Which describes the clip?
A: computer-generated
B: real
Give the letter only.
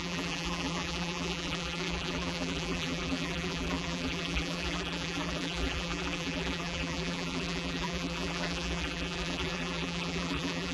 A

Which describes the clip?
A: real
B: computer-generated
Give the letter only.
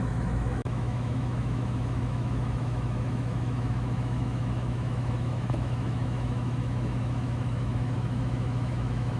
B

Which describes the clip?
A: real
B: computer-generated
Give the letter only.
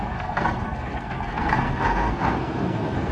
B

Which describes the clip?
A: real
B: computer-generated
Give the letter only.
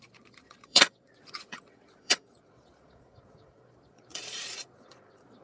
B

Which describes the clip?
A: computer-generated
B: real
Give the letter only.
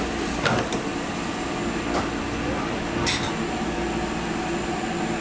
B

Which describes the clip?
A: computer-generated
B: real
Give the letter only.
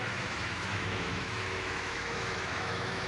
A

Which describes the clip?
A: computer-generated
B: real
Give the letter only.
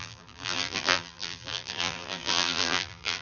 A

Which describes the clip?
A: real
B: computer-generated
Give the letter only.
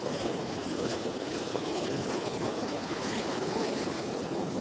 B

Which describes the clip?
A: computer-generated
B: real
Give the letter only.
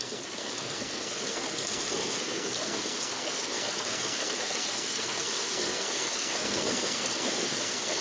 A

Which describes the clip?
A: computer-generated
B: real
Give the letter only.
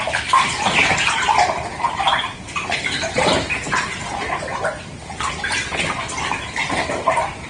B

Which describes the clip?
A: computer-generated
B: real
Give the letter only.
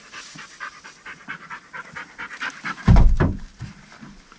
B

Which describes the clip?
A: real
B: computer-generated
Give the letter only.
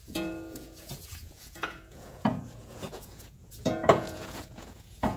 B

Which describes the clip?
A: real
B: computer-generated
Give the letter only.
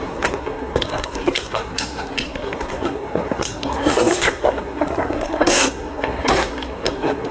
B